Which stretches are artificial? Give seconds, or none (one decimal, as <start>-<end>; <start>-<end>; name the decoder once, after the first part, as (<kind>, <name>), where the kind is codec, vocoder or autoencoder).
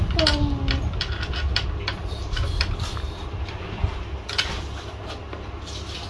2.0-3.9 (vocoder, BigVGAN v2)